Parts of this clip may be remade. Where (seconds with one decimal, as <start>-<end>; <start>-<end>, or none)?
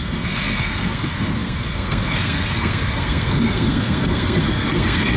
0.0-5.2